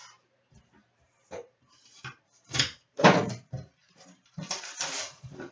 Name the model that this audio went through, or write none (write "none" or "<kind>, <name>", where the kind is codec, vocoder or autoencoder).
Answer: vocoder, BigVGAN v2